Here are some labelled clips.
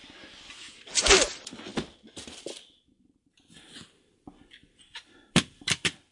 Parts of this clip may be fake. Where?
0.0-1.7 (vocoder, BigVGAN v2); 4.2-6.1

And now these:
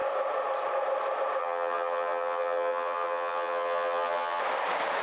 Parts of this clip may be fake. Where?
1.4-4.4 (vocoder, HiFi-GAN)

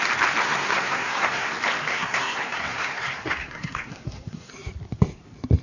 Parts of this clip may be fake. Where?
0.4-1.5 (codec, SNAC); 1.9-4.5